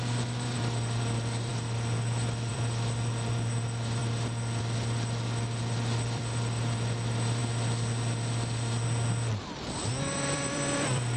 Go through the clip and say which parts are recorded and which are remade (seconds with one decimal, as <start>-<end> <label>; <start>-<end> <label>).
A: 0.0-7.4 remade; 7.4-10.0 recorded; 10.0-11.2 remade